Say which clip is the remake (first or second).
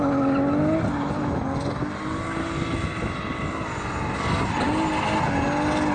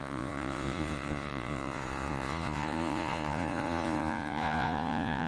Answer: second